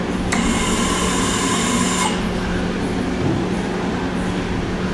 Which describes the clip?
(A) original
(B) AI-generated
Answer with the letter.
A